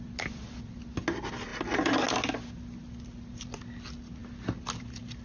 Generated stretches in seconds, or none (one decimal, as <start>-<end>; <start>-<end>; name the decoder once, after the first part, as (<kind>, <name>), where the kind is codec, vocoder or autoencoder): none